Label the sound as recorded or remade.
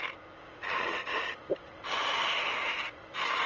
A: recorded